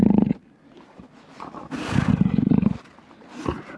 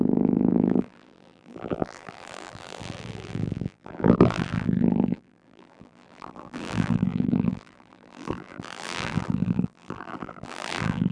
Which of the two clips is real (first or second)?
first